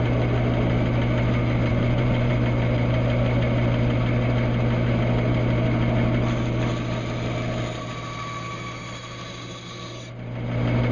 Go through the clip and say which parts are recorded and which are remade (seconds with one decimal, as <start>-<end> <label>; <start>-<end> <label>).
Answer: 0.0-1.7 recorded; 1.7-2.3 remade; 2.3-10.9 recorded